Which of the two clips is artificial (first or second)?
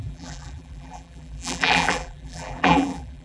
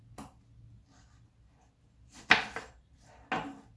first